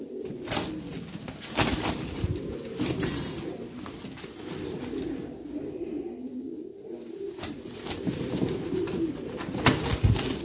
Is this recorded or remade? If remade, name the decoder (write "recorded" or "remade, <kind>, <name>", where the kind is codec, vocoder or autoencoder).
recorded